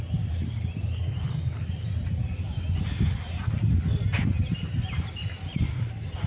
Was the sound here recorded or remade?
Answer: recorded